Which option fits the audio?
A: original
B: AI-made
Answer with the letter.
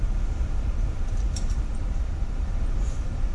B